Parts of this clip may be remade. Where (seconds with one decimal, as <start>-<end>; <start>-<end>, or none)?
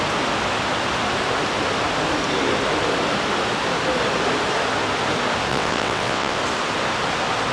5.5-6.4